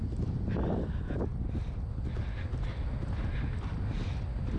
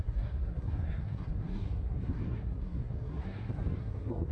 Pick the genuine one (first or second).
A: first